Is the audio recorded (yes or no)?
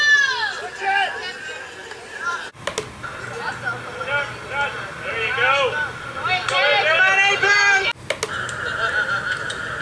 yes